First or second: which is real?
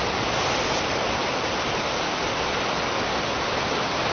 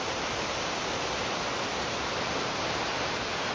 first